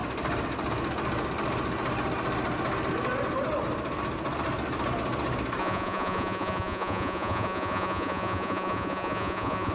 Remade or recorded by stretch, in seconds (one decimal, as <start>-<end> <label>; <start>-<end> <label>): 0.0-5.6 recorded; 5.6-9.7 remade